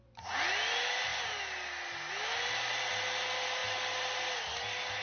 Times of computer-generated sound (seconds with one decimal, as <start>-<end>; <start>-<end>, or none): none